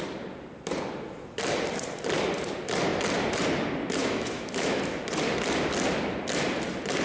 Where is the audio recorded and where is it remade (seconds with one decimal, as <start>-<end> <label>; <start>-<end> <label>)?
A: 0.0-4.0 recorded; 4.0-4.8 remade; 4.8-7.0 recorded